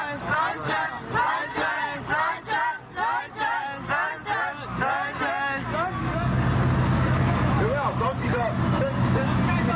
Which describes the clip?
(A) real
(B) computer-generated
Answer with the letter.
A